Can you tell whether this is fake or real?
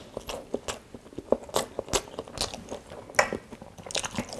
real